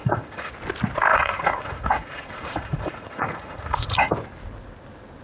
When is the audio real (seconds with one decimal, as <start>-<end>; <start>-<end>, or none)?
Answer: 0.5-1.1; 4.1-5.2